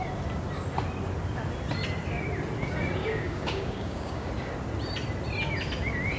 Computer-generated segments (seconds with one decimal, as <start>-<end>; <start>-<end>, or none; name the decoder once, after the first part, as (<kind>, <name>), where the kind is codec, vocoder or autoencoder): 3.0-4.3 (codec, DAC)